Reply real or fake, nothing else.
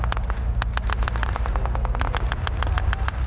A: real